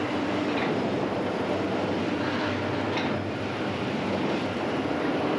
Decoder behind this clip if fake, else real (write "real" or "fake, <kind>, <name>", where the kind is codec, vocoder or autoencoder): fake, vocoder, BigVGAN v2